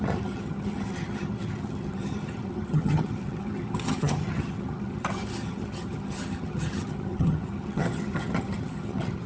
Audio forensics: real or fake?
fake